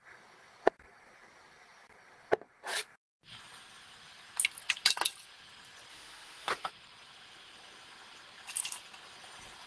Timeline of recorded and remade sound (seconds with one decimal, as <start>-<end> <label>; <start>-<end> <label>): 0.0-5.9 recorded; 5.9-6.7 remade; 6.7-9.7 recorded